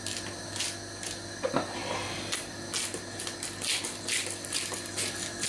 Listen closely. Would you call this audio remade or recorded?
recorded